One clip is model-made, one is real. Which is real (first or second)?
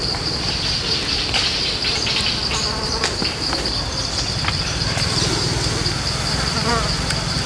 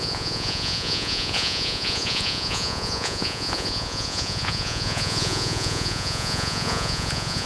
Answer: first